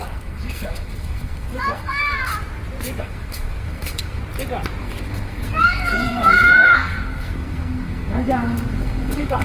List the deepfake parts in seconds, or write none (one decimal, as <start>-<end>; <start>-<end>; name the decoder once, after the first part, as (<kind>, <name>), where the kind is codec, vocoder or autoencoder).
0.0-2.3 (codec, SNAC); 3.0-4.2; 4.8-9.4